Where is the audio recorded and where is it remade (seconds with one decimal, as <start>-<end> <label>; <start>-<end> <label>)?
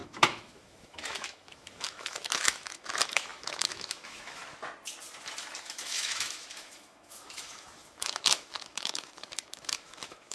0.0-4.4 remade; 4.4-5.6 recorded; 5.6-10.3 remade